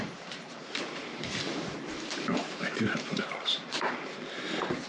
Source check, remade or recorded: remade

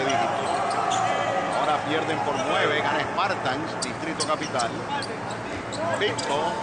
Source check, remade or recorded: recorded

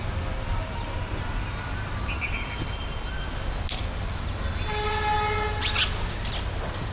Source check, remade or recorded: recorded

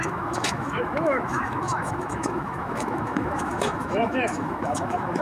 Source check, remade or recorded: remade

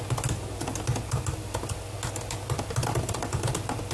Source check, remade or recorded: recorded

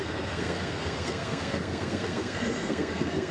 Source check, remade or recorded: remade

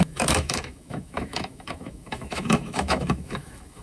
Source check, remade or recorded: remade